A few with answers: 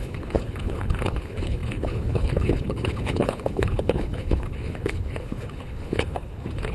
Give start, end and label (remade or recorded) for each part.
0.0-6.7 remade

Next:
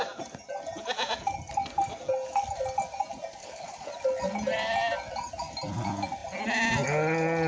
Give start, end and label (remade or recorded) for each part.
0.0-3.4 recorded; 3.4-3.9 remade; 3.9-7.5 recorded